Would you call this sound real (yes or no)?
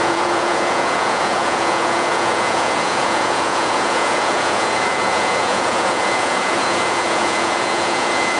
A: no